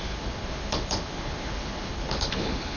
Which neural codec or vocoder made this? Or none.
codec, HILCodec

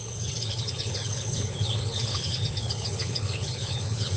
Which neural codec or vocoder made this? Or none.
codec, HILCodec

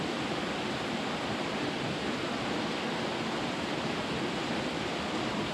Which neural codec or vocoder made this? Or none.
none